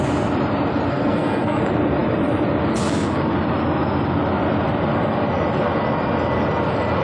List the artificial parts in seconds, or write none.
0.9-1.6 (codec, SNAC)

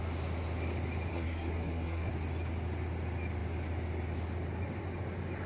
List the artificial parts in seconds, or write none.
1.1-2.1 (codec, SNAC)

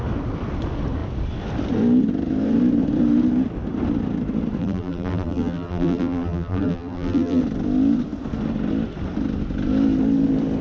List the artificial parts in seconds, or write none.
4.6-7.4 (vocoder, BigVGAN v2)

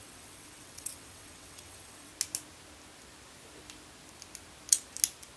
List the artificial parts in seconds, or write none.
0.0-2.1 (vocoder, WaveNeXt)

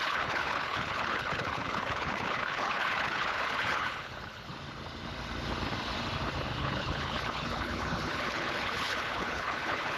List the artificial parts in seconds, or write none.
0.0-4.5 (codec, HILCodec); 6.6-10.0